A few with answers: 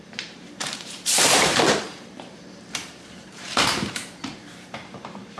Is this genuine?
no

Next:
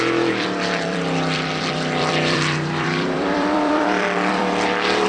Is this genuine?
no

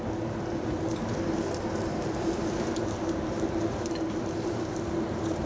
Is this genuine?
no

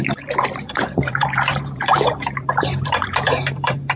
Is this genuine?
no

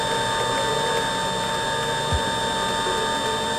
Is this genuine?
yes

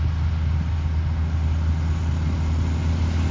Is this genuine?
yes